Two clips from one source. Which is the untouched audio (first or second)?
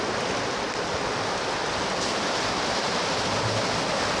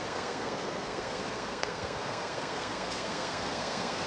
first